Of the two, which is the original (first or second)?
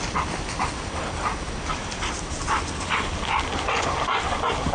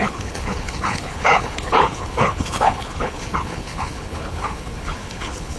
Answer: first